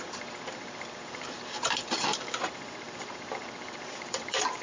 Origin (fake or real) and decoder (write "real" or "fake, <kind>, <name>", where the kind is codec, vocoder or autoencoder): fake, vocoder, BigVGAN v2